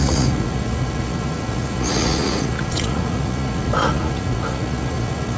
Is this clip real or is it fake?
fake